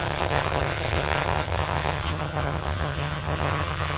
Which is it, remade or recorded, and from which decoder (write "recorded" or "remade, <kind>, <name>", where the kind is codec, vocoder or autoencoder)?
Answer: remade, vocoder, HiFi-GAN